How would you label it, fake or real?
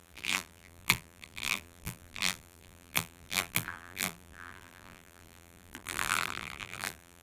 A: fake